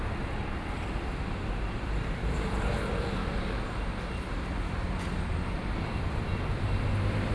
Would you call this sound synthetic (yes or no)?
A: yes